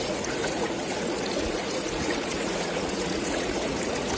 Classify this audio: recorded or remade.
remade